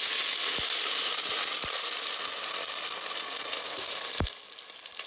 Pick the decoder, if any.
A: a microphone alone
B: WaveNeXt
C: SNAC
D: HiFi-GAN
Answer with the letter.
A